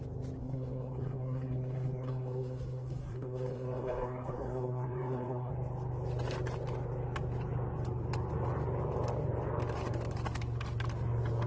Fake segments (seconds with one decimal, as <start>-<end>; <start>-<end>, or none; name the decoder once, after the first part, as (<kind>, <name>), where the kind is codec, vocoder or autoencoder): 0.4-5.5 (codec, SNAC)